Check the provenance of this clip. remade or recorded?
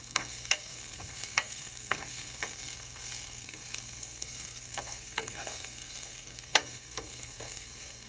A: remade